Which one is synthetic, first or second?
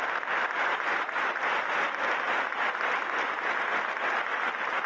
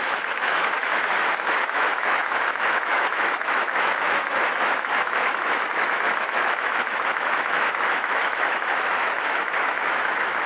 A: second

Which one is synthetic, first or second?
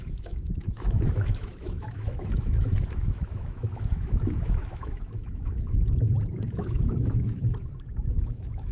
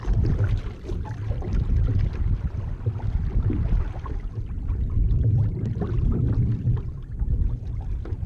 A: first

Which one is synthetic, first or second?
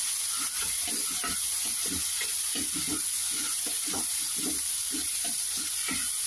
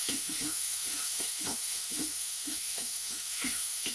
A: second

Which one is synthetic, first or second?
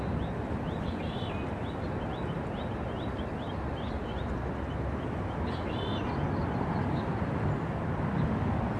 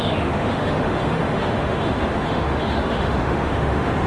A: second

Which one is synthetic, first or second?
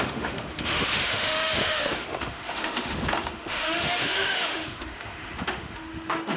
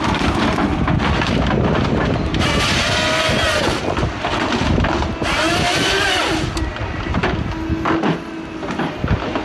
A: first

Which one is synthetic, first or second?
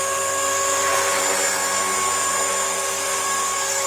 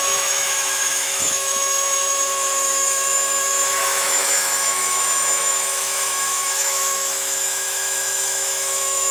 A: second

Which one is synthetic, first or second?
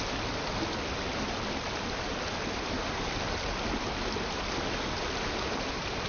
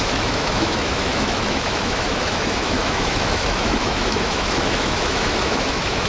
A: second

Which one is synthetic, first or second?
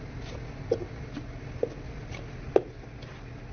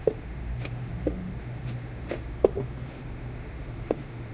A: second